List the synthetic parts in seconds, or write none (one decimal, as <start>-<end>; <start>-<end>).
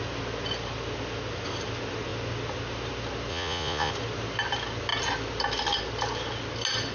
3.3-3.9